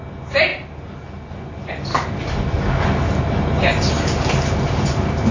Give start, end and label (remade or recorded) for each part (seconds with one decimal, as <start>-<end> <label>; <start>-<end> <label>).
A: 0.0-5.3 recorded